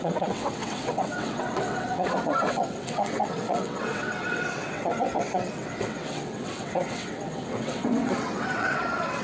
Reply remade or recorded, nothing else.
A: remade